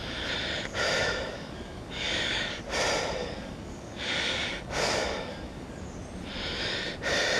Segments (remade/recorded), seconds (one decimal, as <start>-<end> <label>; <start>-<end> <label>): 0.0-1.0 recorded; 1.0-2.6 remade; 2.6-3.2 recorded; 3.2-5.8 remade; 5.8-7.4 recorded